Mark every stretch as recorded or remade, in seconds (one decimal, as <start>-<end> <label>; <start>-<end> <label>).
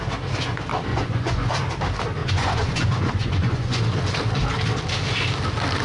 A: 0.0-0.9 recorded; 0.9-1.5 remade; 1.5-2.2 recorded; 2.2-3.8 remade; 3.8-5.8 recorded